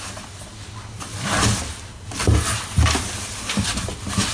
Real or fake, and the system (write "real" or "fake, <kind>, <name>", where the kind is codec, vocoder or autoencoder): real